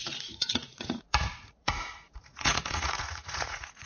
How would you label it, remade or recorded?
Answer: remade